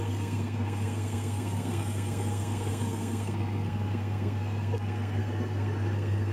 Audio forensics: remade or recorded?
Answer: remade